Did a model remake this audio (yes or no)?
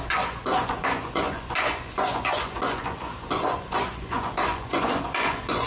yes